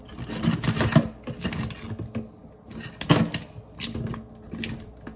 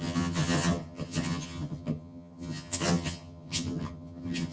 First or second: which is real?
first